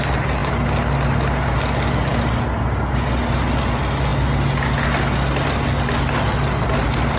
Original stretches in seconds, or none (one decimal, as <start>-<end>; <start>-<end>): 0.0-7.2